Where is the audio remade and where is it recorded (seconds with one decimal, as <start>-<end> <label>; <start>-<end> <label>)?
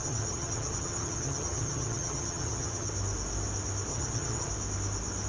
0.0-2.9 remade; 2.9-3.9 recorded; 3.9-4.5 remade; 4.5-5.3 recorded